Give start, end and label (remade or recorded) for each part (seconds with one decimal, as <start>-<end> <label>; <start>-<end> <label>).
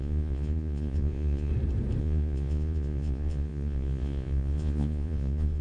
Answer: 0.0-1.5 remade; 1.5-2.0 recorded; 2.0-5.6 remade